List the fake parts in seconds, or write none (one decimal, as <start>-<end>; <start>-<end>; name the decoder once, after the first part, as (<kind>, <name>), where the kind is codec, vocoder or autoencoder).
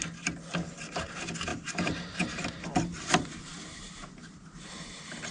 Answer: 1.5-4.7 (vocoder, BigVGAN v2)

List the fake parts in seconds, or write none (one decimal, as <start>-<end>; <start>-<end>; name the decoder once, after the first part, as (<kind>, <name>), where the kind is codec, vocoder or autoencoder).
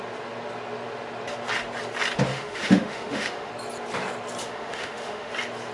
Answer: 2.3-3.5 (autoencoder, DAC-VAE); 4.4-5.3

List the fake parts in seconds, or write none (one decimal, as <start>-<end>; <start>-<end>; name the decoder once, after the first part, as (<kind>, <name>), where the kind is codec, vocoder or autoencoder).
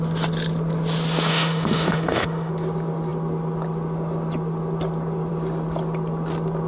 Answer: 1.3-2.5 (autoencoder, DAC-VAE)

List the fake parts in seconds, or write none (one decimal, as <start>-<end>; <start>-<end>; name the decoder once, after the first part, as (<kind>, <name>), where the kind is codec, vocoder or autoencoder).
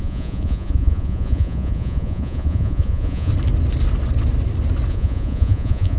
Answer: 0.0-3.3 (vocoder, Vocos); 4.9-6.0